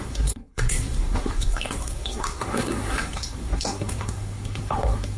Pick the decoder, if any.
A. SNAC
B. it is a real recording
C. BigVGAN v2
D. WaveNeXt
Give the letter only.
A